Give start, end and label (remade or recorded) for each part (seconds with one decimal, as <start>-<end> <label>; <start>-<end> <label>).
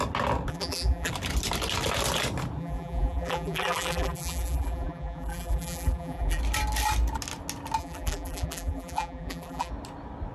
0.0-0.5 recorded; 0.5-1.1 remade; 1.1-2.6 recorded; 2.6-6.4 remade; 6.4-7.8 recorded; 7.8-9.7 remade; 9.7-10.3 recorded